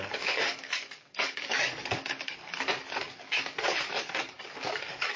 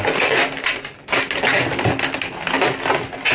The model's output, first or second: first